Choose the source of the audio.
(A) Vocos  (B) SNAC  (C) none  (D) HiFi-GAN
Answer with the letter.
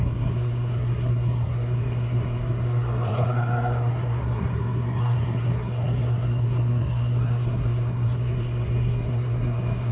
B